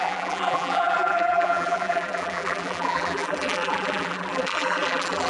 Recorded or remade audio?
remade